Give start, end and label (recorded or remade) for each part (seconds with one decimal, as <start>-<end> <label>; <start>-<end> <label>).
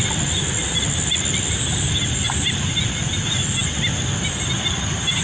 0.0-5.2 recorded